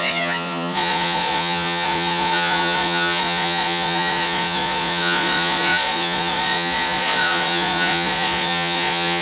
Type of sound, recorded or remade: remade